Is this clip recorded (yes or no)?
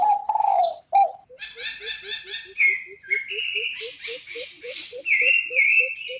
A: yes